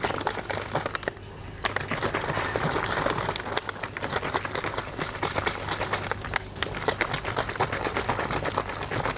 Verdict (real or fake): real